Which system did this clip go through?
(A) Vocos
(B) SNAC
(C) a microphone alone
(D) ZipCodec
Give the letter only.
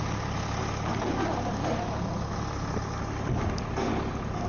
C